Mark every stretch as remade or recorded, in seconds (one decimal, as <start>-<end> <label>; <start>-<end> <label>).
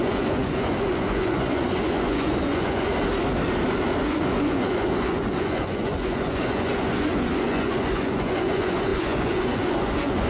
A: 0.0-2.9 remade; 2.9-4.0 recorded; 4.0-10.3 remade